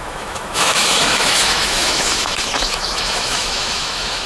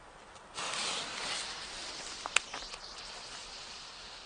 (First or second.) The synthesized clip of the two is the first